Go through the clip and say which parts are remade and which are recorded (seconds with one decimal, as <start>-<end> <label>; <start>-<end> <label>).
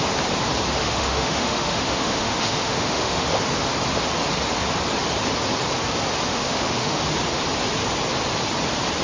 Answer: 0.0-0.8 recorded; 0.8-3.3 remade; 3.3-6.3 recorded; 6.3-7.0 remade; 7.0-9.0 recorded